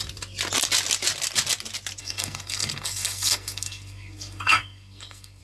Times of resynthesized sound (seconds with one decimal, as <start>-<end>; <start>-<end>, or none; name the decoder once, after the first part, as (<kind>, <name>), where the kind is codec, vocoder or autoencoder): 2.0-5.4 (codec, SNAC)